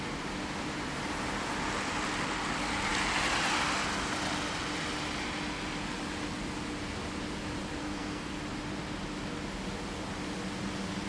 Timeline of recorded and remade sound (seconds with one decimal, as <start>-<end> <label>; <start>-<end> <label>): 0.0-7.8 recorded; 7.8-8.4 remade; 8.4-11.1 recorded